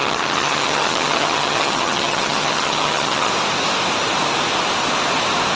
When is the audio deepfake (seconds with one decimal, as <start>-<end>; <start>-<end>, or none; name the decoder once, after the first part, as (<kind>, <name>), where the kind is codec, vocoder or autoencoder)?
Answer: 0.0-3.3 (vocoder, HiFi-GAN)